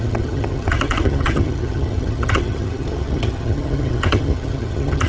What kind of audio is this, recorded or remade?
remade